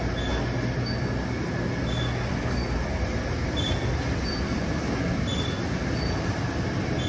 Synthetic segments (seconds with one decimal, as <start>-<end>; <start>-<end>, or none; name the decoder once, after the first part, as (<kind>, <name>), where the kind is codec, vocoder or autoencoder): none